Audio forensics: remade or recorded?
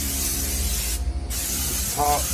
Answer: recorded